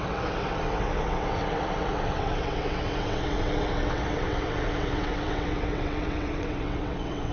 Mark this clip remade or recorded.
remade